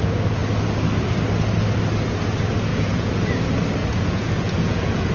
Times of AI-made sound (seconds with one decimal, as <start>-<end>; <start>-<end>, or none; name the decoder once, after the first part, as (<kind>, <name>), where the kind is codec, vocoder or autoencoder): 2.7-3.4 (vocoder, Vocos); 3.8-5.1